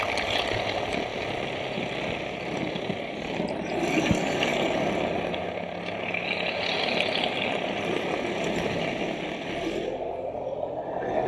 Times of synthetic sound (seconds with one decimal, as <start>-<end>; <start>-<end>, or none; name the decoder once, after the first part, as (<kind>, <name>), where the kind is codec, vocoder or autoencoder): none